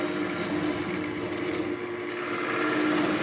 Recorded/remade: recorded